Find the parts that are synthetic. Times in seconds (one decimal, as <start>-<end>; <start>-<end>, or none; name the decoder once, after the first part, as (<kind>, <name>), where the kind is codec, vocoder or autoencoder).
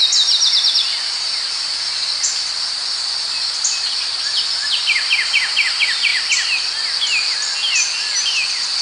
none